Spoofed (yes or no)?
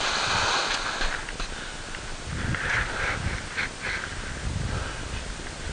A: no